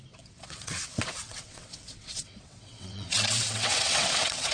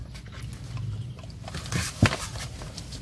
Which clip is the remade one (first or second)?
first